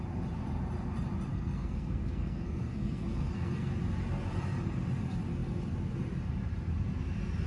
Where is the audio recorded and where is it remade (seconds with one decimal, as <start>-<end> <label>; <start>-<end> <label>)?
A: 0.0-1.3 recorded; 1.3-3.7 remade; 3.7-7.5 recorded